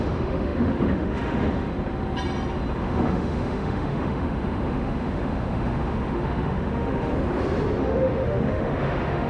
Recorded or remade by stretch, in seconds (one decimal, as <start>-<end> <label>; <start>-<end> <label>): 0.0-1.7 remade; 1.7-2.8 recorded; 2.8-7.1 remade; 7.1-7.8 recorded; 7.8-9.3 remade